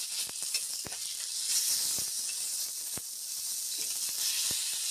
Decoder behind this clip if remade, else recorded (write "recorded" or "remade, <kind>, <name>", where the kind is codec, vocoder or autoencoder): recorded